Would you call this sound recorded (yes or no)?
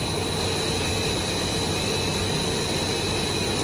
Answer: yes